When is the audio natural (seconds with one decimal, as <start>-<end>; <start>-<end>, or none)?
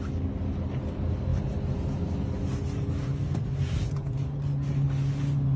0.0-5.6